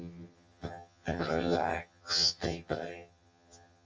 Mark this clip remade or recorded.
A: remade